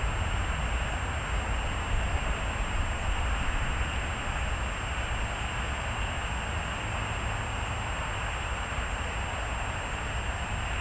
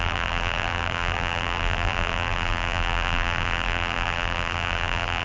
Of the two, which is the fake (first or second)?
second